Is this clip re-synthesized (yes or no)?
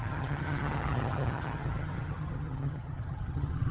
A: yes